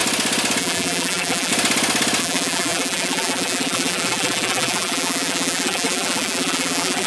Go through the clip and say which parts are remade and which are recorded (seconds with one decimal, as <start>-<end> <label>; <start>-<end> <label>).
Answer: 0.0-0.6 recorded; 0.6-1.5 remade; 1.5-2.2 recorded; 2.2-7.1 remade